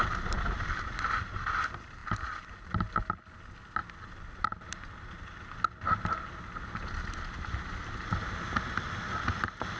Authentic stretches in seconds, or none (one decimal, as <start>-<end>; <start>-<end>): 0.0-9.8